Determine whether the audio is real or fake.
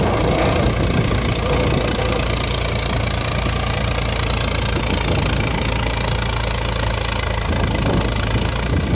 real